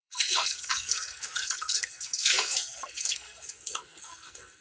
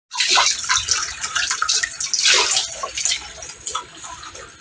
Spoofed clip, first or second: first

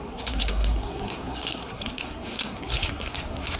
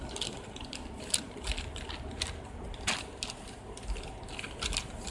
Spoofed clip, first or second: first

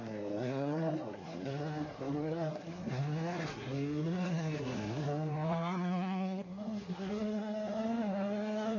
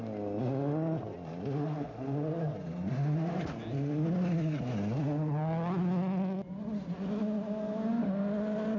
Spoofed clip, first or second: first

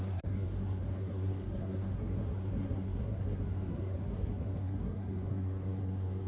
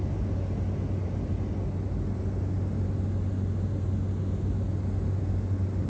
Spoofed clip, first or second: first